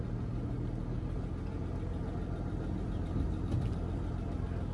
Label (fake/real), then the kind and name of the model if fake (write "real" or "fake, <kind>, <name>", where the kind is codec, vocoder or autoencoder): real